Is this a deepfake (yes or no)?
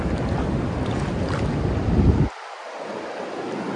no